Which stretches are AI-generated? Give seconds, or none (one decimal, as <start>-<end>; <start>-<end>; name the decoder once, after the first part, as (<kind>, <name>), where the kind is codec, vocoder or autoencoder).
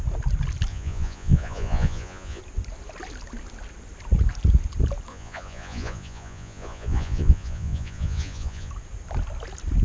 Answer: 0.7-2.4 (vocoder, Vocos); 5.1-8.7